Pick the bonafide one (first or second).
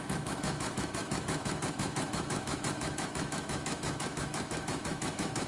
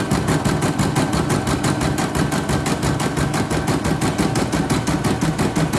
second